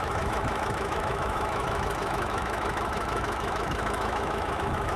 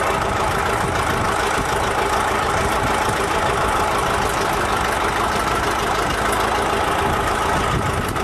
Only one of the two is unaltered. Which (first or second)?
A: second